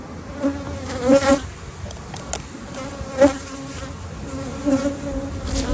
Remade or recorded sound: recorded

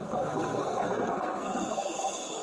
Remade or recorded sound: remade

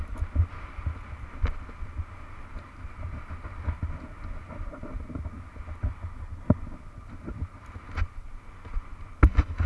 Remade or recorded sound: recorded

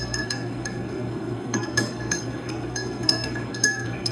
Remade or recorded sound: remade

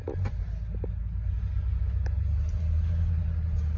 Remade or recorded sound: recorded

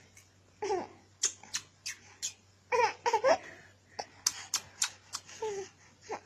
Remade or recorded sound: recorded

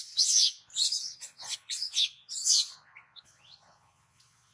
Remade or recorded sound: remade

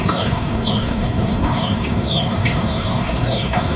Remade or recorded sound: remade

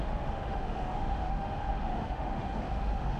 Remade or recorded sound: remade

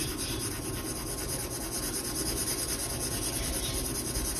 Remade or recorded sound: recorded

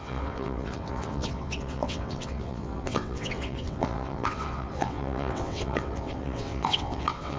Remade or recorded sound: remade